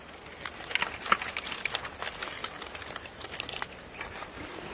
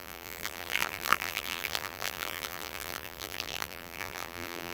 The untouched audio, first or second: first